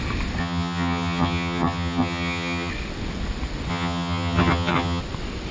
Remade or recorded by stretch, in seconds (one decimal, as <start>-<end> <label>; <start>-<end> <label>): 0.0-0.4 recorded; 0.4-2.7 remade; 2.7-3.7 recorded; 3.7-5.0 remade; 5.0-5.5 recorded